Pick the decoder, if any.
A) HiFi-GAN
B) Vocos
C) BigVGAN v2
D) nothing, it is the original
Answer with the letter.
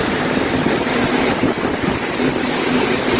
D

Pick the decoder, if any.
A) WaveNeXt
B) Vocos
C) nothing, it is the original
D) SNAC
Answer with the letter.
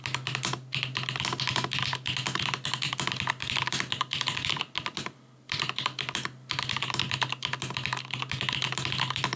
C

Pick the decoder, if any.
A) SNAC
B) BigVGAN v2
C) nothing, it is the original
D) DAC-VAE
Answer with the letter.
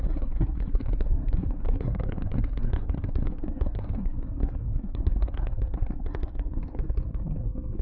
A